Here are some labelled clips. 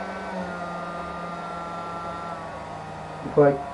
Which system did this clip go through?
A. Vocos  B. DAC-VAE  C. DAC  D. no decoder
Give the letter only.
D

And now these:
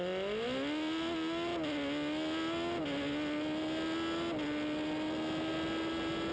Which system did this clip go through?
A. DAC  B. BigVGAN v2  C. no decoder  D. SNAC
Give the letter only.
C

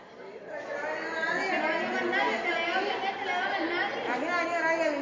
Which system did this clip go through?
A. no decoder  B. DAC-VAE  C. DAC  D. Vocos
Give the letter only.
A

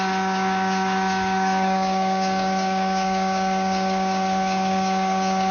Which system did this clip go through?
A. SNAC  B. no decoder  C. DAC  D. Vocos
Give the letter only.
C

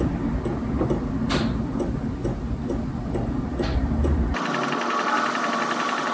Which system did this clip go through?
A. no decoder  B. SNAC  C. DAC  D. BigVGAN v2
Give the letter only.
A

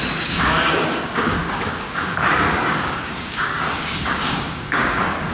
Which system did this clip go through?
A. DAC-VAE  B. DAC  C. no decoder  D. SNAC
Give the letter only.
B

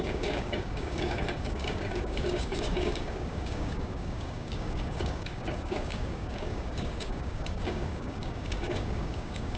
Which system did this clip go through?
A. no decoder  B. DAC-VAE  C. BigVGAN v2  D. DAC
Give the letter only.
D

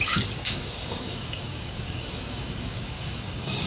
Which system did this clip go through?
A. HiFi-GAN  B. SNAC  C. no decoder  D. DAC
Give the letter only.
D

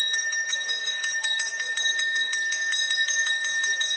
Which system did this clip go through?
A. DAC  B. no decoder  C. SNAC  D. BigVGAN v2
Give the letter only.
A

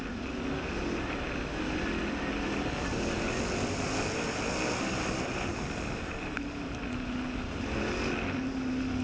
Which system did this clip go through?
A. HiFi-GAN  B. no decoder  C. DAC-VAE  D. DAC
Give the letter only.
B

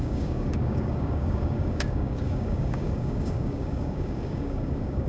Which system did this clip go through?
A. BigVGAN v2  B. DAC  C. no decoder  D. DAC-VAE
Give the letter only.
B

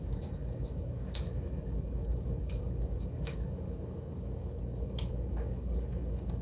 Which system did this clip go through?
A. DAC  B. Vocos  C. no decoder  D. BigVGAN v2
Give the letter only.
A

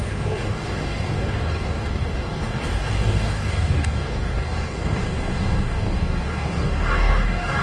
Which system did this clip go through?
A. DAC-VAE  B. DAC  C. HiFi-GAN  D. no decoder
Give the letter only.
B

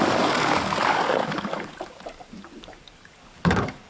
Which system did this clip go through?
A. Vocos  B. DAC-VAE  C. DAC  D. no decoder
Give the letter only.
C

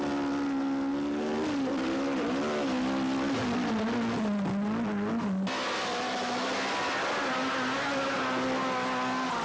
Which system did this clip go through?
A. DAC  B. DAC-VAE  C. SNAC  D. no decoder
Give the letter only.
D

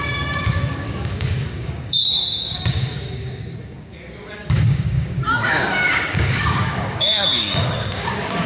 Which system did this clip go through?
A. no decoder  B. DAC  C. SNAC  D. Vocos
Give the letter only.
B